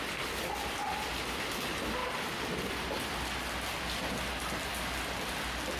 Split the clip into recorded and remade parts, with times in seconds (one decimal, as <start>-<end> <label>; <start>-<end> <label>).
0.0-5.8 recorded